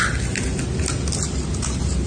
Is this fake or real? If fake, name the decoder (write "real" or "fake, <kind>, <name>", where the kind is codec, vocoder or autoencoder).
real